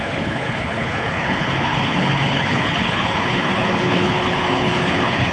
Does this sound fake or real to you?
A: fake